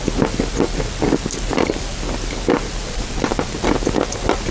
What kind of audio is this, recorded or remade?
recorded